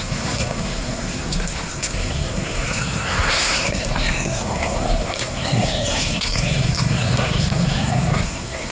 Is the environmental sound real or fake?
fake